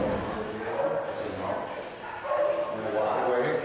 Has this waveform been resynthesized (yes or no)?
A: no